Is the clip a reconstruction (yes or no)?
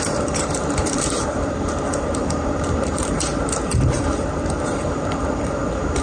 yes